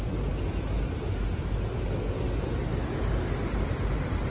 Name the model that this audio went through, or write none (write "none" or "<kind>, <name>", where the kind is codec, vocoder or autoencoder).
none